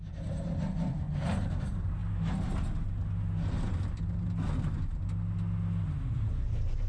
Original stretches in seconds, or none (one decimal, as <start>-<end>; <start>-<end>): 2.0-6.1